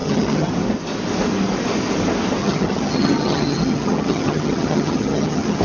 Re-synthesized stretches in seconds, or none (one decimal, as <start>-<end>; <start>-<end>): 0.0-0.5; 2.4-5.6